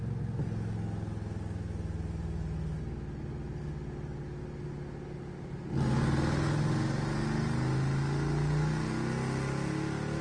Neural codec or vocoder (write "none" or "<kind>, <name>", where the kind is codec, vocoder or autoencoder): none